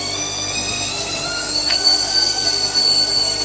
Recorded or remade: remade